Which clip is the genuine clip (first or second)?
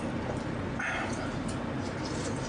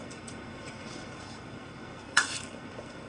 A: first